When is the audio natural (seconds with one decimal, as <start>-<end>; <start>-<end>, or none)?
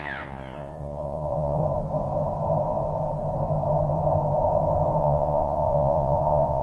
1.6-5.0